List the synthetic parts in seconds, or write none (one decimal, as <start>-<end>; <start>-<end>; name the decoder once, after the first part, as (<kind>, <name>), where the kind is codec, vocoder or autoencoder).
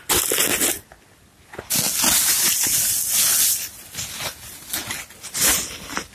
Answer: none